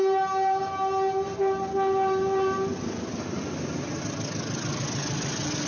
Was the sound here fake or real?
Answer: real